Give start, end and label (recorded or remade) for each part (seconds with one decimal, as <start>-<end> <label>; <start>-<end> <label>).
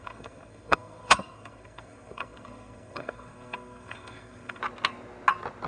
0.0-4.6 remade; 4.6-5.7 recorded